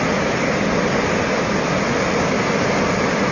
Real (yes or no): yes